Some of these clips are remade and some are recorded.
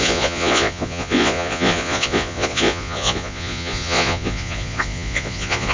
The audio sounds remade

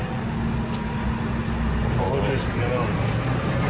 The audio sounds recorded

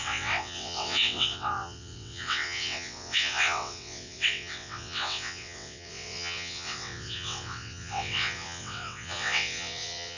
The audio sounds remade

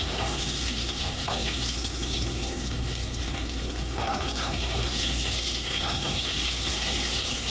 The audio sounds remade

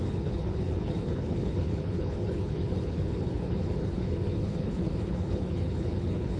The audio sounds remade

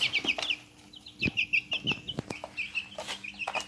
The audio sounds recorded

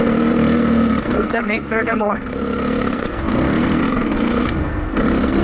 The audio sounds remade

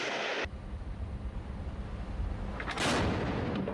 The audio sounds recorded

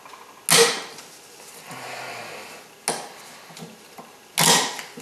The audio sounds recorded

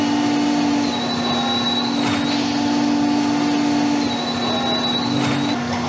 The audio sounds recorded